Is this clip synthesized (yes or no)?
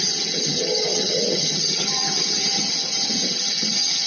yes